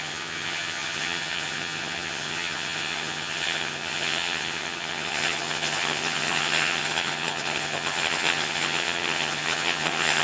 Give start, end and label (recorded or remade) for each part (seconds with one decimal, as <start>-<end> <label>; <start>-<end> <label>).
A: 0.0-10.2 remade